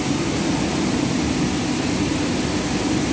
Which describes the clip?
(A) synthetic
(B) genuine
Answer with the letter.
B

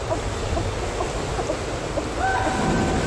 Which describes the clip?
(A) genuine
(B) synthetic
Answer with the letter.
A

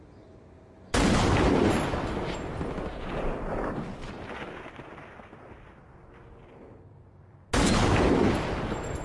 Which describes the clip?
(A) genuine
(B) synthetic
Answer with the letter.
A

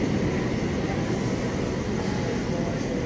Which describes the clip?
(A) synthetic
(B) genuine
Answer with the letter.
B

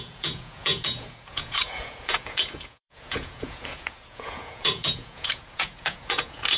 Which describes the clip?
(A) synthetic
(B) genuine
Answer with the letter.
A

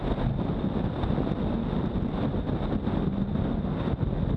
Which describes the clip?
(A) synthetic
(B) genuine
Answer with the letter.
B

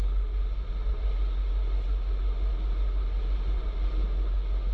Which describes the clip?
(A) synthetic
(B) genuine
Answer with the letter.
B